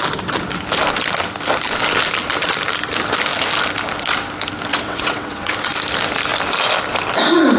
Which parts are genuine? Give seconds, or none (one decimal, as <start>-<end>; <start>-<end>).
0.0-4.7; 5.5-7.6